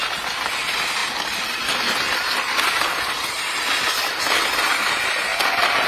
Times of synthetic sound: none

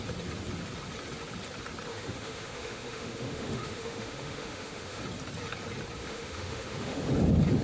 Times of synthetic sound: 1.9-5.0 (autoencoder, DAC-VAE); 6.0-7.1

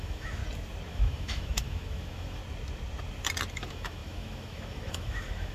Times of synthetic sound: 0.0-0.4 (autoencoder, DAC-VAE); 0.9-2.4; 3.5-5.5